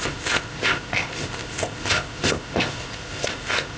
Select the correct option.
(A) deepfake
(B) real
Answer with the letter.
A